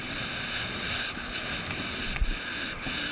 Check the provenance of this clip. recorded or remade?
recorded